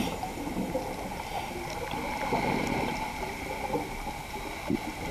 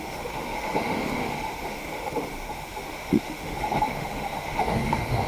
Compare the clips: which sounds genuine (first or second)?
first